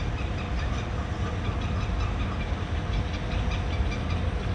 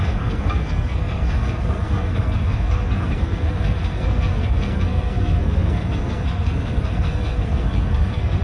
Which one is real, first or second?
first